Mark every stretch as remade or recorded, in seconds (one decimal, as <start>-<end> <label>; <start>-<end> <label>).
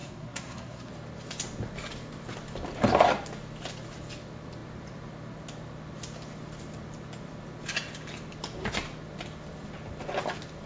0.0-0.9 remade; 0.9-10.7 recorded